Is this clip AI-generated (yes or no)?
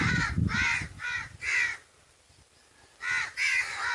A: no